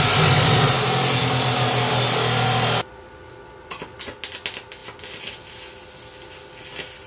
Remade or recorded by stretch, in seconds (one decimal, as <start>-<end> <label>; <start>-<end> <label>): 0.0-7.1 recorded